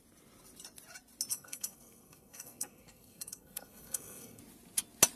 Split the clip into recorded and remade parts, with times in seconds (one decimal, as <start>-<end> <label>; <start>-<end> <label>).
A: 0.0-1.3 recorded; 1.3-4.4 remade; 4.4-5.2 recorded